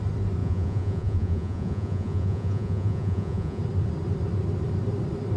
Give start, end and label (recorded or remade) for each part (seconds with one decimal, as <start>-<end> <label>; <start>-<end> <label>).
0.0-0.4 recorded; 0.4-3.6 remade; 3.6-5.4 recorded